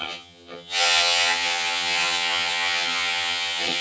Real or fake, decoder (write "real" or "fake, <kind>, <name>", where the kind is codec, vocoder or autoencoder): fake, vocoder, HiFi-GAN